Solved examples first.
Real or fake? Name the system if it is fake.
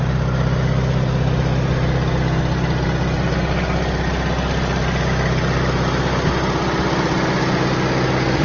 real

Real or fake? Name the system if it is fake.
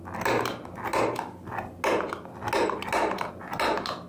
real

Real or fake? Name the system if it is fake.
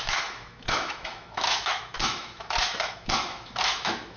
fake, autoencoder, DAC-VAE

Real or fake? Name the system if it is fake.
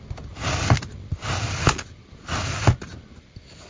real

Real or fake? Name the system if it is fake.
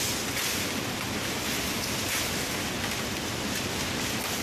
real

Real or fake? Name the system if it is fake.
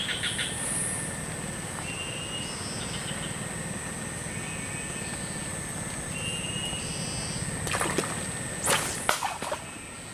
real